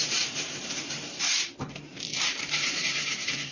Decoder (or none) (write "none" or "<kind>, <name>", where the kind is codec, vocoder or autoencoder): vocoder, BigVGAN v2